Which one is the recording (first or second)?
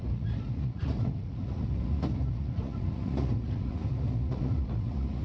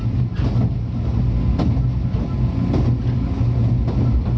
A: second